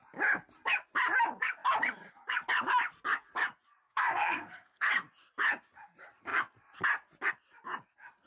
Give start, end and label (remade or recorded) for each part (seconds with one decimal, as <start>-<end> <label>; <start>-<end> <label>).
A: 0.0-3.8 recorded; 3.8-4.9 remade; 4.9-8.3 recorded